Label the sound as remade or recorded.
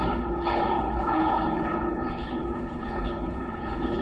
remade